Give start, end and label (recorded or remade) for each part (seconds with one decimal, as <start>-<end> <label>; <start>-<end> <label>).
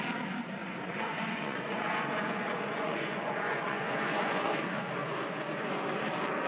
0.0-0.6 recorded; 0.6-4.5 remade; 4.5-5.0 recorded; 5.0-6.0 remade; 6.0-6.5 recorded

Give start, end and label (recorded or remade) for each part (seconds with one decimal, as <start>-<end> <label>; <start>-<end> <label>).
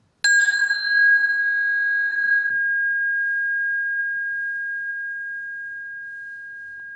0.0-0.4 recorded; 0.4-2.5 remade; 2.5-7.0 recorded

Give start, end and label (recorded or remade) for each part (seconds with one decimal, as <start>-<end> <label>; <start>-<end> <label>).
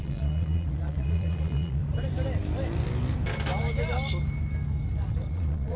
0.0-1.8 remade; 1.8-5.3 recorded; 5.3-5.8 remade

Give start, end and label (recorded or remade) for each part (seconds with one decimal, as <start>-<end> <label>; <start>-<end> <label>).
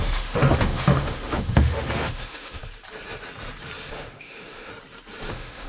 0.0-2.6 remade; 2.6-3.9 recorded; 3.9-4.7 remade; 4.7-5.3 recorded; 5.3-5.7 remade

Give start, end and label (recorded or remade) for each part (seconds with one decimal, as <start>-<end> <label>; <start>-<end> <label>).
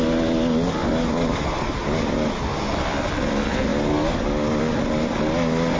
0.0-5.8 recorded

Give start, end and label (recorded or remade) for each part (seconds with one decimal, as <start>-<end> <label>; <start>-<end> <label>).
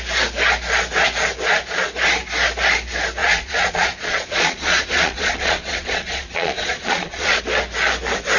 0.0-3.2 recorded; 3.2-7.4 remade; 7.4-8.4 recorded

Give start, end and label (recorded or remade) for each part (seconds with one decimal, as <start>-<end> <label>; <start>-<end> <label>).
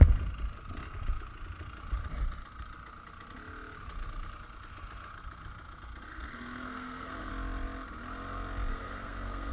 0.0-6.1 recorded; 6.1-7.3 remade; 7.3-8.7 recorded; 8.7-9.5 remade